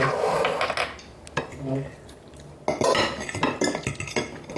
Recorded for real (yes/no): yes